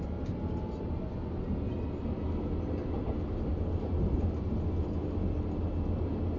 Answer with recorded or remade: recorded